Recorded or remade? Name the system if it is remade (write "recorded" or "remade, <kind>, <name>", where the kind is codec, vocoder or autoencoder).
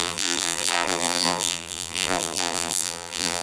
remade, vocoder, BigVGAN v2